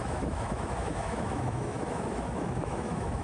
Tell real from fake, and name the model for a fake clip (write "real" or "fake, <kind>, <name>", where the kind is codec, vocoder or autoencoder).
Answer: fake, autoencoder, DAC-VAE